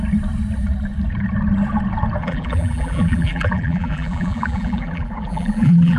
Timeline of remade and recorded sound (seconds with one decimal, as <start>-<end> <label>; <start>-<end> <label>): 0.0-2.2 recorded; 2.2-6.0 remade